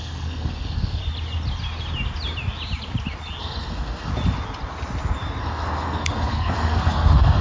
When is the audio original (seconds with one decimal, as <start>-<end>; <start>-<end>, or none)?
1.0-3.4; 4.1-5.4